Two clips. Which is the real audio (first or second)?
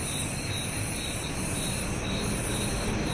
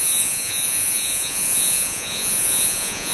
first